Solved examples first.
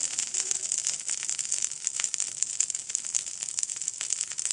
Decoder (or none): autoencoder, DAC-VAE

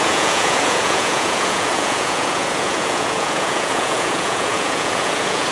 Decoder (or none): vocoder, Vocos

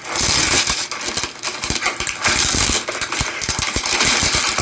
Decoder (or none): none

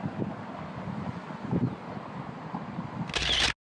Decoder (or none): none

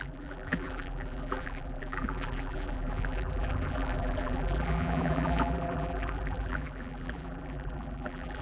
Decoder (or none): vocoder, BigVGAN v2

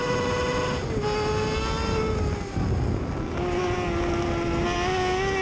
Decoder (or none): none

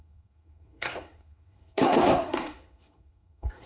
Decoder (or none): codec, SNAC